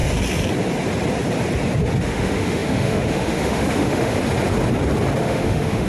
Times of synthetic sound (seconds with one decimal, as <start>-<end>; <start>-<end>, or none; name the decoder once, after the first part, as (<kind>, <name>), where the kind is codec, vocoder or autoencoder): 2.0-4.2 (autoencoder, DAC-VAE); 5.2-5.9